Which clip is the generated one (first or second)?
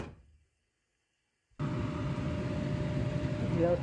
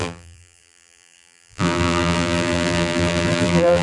second